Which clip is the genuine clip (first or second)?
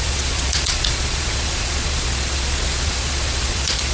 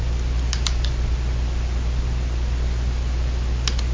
second